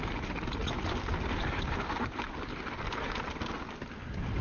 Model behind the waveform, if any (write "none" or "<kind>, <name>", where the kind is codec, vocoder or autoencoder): none